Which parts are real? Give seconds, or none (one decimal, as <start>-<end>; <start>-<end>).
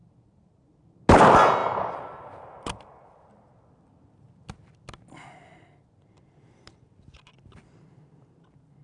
0.0-8.8